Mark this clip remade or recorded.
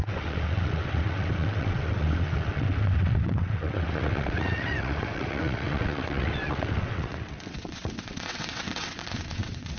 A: remade